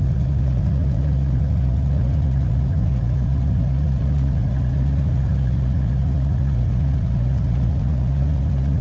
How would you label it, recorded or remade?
remade